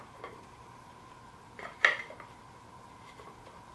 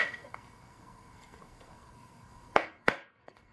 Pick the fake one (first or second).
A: second